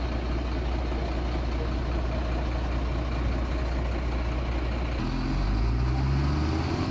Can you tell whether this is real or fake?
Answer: real